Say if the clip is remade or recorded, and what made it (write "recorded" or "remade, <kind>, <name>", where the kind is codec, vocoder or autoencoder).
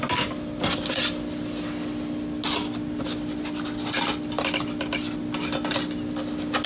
recorded